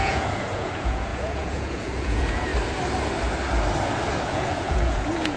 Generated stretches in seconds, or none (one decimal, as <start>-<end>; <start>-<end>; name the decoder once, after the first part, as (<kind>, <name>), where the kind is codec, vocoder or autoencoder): 0.0-2.5 (vocoder, Vocos); 4.1-5.4

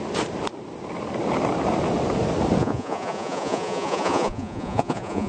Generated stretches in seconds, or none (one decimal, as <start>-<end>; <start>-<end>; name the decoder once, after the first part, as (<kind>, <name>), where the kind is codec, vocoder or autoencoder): 2.6-5.3 (vocoder, Vocos)

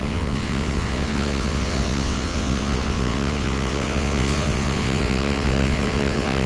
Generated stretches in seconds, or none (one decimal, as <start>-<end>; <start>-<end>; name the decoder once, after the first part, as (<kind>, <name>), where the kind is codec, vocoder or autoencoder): 0.0-6.5 (vocoder, WaveNeXt)

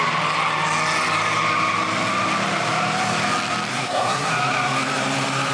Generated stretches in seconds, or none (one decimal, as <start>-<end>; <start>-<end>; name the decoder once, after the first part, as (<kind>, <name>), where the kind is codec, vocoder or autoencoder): 3.7-4.3 (codec, SNAC)